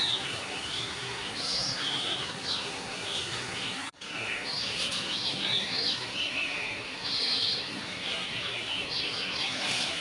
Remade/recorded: remade